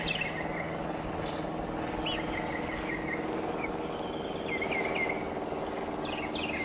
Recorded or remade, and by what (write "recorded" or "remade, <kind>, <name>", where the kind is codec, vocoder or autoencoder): recorded